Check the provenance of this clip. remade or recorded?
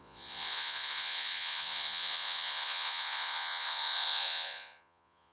remade